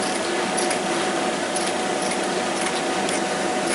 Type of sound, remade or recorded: recorded